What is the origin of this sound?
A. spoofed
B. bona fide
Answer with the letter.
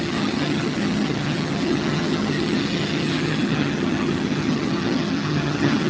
A